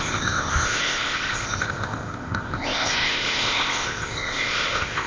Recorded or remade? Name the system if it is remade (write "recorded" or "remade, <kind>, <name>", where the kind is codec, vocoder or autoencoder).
remade, codec, ZipCodec